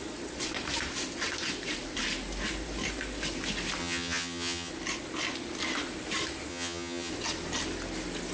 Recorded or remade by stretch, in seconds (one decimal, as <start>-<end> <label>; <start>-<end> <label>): 0.0-3.8 recorded; 3.8-4.7 remade; 4.7-6.5 recorded; 6.5-7.1 remade; 7.1-8.3 recorded